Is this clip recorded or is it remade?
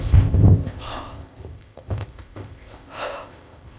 remade